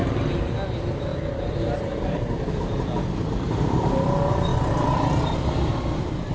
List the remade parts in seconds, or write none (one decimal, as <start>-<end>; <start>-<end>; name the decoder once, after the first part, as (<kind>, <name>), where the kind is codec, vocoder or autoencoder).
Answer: 4.5-6.3 (vocoder, BigVGAN v2)